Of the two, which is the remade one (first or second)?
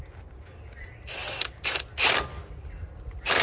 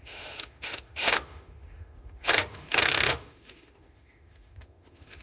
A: second